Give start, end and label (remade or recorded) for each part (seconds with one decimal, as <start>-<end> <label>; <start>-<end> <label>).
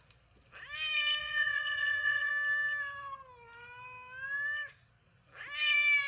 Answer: 0.0-1.2 recorded; 1.2-2.3 remade; 2.3-6.1 recorded